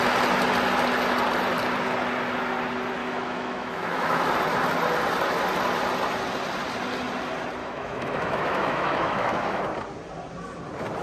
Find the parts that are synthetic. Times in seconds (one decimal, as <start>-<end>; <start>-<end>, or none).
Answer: 3.0-4.3; 7.6-9.6